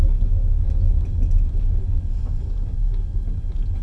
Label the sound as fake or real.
real